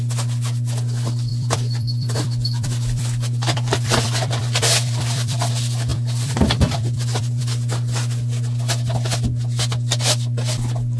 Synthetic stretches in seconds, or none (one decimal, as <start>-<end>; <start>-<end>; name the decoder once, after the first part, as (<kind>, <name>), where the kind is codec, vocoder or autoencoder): 1.3-5.5 (vocoder, BigVGAN v2); 5.9-7.4